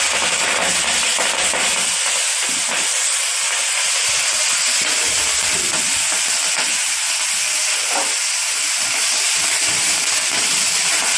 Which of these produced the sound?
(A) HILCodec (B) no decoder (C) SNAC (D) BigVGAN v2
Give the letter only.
B